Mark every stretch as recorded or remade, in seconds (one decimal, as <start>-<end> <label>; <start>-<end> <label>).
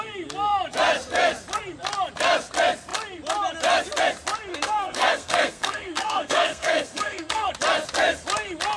0.0-4.5 recorded; 4.5-7.5 remade; 7.5-8.8 recorded